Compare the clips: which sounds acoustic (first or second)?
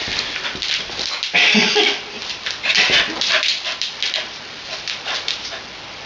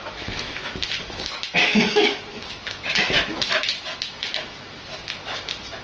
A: first